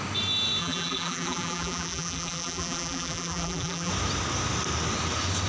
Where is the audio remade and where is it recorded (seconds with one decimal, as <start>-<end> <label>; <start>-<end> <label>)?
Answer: 0.0-0.6 recorded; 0.6-3.9 remade; 3.9-5.5 recorded